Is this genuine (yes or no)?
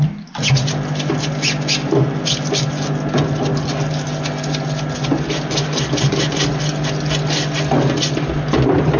yes